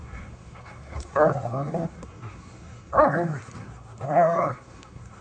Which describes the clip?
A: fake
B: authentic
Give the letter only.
A